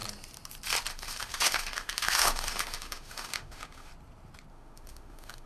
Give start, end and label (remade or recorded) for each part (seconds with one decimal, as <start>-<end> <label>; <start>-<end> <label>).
0.0-0.9 recorded; 0.9-3.9 remade; 3.9-4.5 recorded; 4.5-5.5 remade